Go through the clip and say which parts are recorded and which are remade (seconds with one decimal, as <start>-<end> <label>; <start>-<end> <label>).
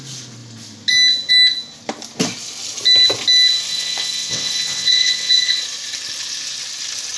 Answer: 0.0-3.7 recorded; 3.7-5.6 remade; 5.6-7.2 recorded